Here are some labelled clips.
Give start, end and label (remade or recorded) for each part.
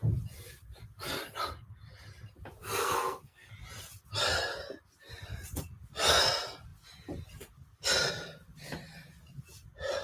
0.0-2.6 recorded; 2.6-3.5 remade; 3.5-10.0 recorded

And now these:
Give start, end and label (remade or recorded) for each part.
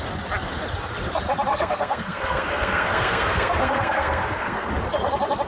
0.0-1.5 recorded; 1.5-4.7 remade; 4.7-5.5 recorded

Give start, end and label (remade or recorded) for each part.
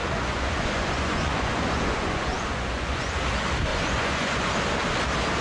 0.0-3.2 remade; 3.2-3.7 recorded; 3.7-4.5 remade; 4.5-5.4 recorded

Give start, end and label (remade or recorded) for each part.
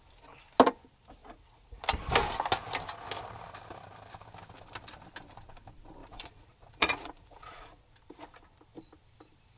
0.0-1.2 recorded; 1.2-1.8 remade; 1.8-6.0 recorded; 6.0-7.8 remade; 7.8-9.6 recorded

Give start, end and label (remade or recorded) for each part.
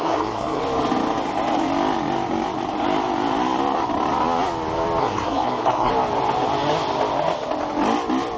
0.0-0.6 remade; 0.6-5.0 recorded; 5.0-5.9 remade; 5.9-8.4 recorded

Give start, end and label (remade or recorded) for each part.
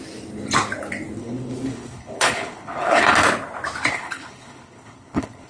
0.0-1.2 recorded; 1.2-3.0 remade; 3.0-3.9 recorded; 3.9-5.5 remade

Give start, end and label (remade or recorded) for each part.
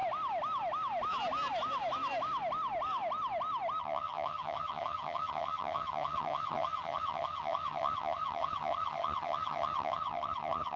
0.0-3.8 recorded; 3.8-10.8 remade